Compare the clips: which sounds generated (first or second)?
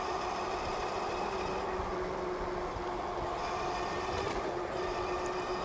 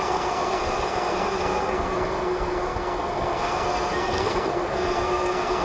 second